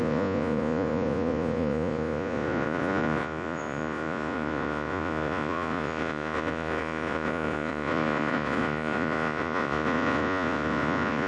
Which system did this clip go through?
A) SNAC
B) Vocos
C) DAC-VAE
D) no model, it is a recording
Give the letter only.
B